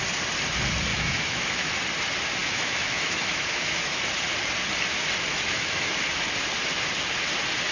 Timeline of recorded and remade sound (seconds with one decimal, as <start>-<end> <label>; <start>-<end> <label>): 0.0-0.9 recorded; 0.9-1.7 remade; 1.7-2.4 recorded; 2.4-4.0 remade; 4.0-5.3 recorded; 5.3-5.9 remade; 5.9-7.7 recorded